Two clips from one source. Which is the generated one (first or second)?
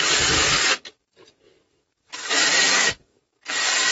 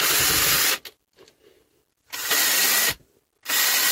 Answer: first